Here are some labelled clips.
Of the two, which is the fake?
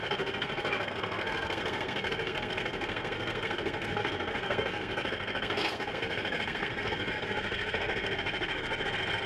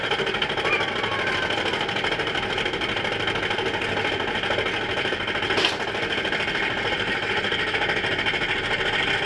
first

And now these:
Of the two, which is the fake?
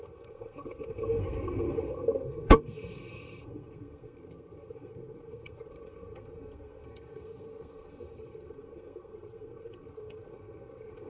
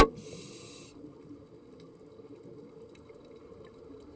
first